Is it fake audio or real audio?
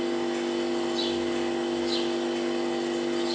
real